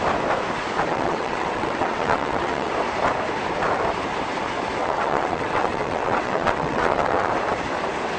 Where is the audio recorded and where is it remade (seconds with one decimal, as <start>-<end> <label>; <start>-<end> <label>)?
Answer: 0.0-0.9 recorded; 0.9-2.7 remade; 2.7-4.8 recorded; 4.8-7.3 remade; 7.3-8.2 recorded